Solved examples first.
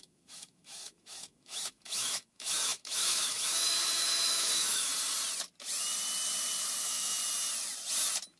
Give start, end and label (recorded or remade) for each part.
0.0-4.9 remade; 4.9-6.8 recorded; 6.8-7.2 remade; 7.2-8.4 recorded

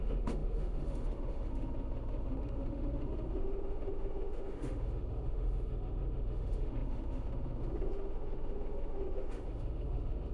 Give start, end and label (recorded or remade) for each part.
0.0-10.3 remade

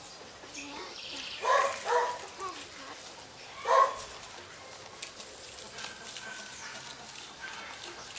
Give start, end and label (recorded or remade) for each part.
0.0-8.2 recorded

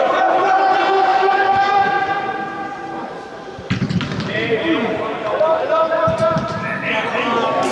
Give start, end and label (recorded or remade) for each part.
0.0-1.1 recorded; 1.1-1.9 remade; 1.9-7.7 recorded

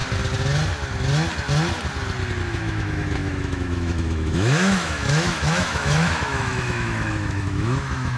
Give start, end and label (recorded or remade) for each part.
0.0-2.5 recorded; 2.5-8.2 remade